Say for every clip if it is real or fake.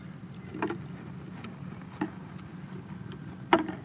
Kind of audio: real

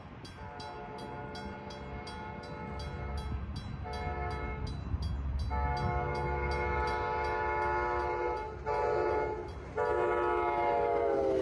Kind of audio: real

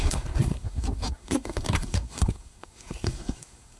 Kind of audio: fake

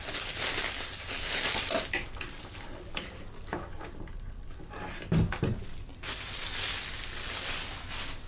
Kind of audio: real